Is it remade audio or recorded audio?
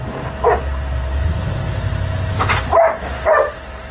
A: recorded